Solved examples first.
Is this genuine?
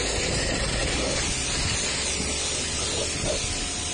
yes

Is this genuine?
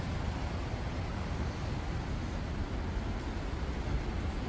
yes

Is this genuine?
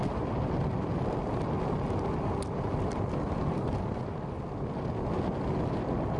yes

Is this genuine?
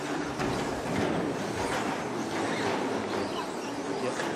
yes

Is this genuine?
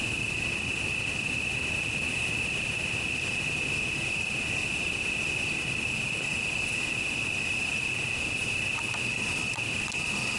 yes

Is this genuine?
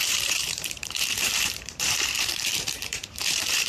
no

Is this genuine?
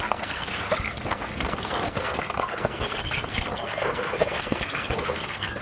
no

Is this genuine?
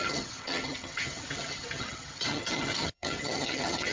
no